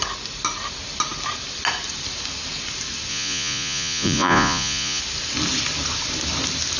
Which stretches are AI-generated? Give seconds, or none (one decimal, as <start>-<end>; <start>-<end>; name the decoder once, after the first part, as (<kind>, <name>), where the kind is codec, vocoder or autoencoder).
3.1-5.0 (vocoder, Vocos)